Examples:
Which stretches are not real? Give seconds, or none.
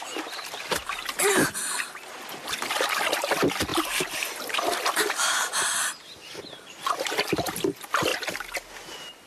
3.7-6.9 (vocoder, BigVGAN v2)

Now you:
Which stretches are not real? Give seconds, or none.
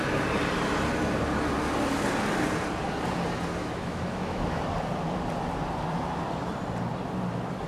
3.6-4.6 (autoencoder, DAC-VAE)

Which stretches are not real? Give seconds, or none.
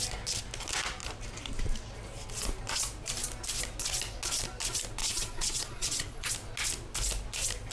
5.0-6.3 (vocoder, Vocos)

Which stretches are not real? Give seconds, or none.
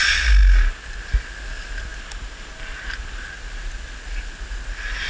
none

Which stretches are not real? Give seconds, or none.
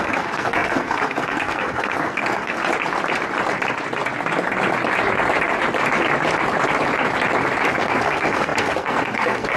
0.0-2.6 (codec, SNAC); 7.7-9.6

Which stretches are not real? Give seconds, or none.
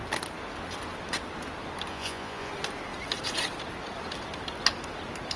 1.9-2.5 (vocoder, Vocos)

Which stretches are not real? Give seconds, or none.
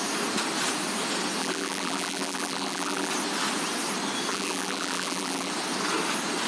1.4-3.1 (vocoder, BigVGAN v2); 4.3-5.5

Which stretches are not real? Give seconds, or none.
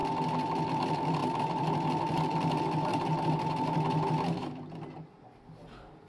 0.7-3.1 (vocoder, BigVGAN v2); 4.3-6.1